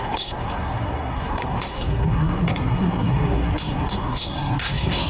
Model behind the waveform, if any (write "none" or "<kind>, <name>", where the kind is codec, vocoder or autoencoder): codec, SNAC